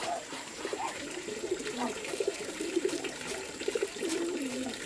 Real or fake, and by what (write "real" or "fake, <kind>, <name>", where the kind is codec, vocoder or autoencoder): fake, vocoder, BigVGAN v2